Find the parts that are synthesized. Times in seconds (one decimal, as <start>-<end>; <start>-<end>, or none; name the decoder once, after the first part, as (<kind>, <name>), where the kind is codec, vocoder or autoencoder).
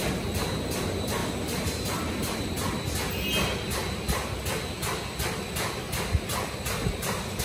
1.2-2.5 (vocoder, BigVGAN v2)